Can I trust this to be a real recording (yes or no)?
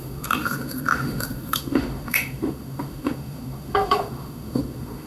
no